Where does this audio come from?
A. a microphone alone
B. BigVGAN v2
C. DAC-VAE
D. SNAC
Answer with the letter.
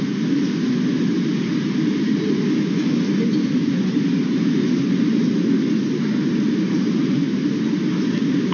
A